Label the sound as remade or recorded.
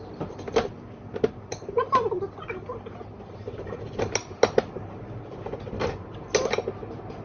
recorded